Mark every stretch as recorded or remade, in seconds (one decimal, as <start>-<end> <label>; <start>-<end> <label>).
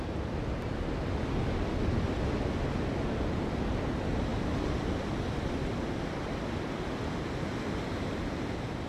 0.0-8.9 recorded